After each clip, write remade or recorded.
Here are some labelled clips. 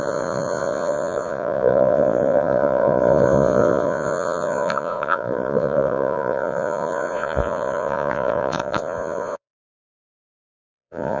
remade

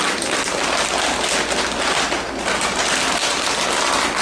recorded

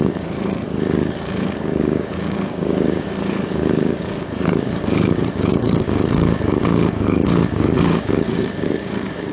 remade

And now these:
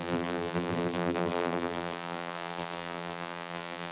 remade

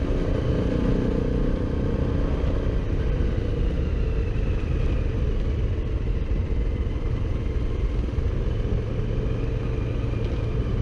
recorded